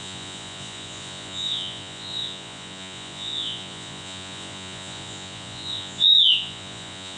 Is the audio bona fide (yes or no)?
no